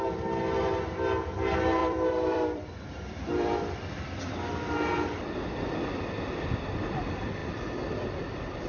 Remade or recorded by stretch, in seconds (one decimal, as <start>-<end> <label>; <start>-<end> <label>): 0.0-1.8 recorded; 1.8-6.1 remade; 6.1-8.7 recorded